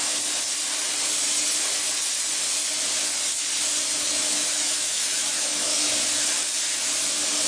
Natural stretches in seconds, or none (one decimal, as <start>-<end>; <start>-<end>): 0.0-3.9; 5.9-7.5

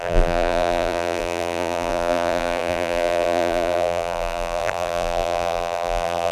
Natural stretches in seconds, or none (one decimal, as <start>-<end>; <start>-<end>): none

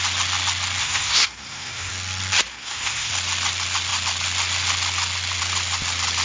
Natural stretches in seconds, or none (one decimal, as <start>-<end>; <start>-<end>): 0.0-0.8; 1.9-2.5; 3.1-6.2

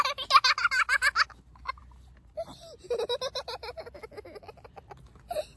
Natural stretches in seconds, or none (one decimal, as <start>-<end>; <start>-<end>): 0.0-5.6

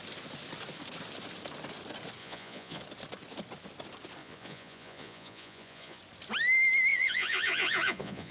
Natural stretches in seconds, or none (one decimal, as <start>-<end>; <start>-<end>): 0.0-2.2; 2.8-4.2; 6.0-6.9

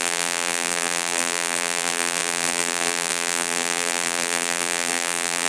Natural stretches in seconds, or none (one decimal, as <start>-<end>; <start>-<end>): none

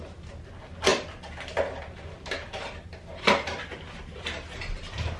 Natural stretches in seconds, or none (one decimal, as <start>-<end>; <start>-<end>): 0.0-5.2

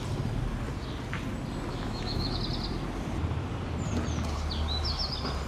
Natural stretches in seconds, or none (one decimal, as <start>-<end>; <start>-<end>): 0.0-1.7; 2.4-5.5